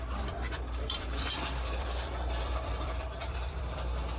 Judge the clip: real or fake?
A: fake